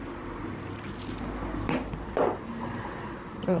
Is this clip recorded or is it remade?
remade